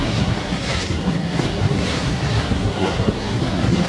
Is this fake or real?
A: fake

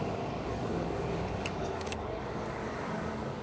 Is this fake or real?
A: fake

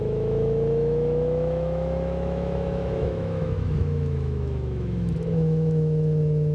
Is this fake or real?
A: fake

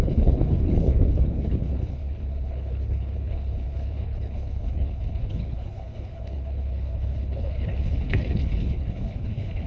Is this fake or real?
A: fake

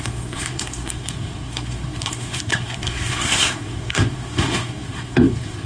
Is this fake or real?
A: fake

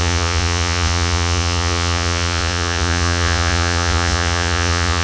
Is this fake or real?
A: fake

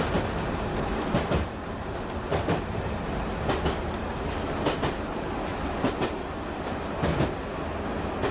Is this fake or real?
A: real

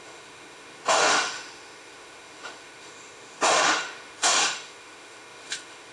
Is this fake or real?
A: fake